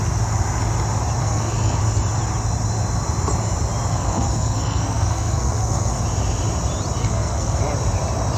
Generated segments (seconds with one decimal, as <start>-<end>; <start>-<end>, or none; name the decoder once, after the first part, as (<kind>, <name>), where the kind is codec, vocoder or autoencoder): 1.2-1.8 (codec, SNAC); 3.9-6.0; 7.0-7.6